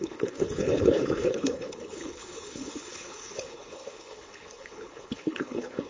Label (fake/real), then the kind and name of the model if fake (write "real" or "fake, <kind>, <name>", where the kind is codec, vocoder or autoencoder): fake, codec, HILCodec